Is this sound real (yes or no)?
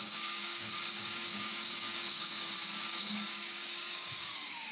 no